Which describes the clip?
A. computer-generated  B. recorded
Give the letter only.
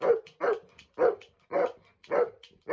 B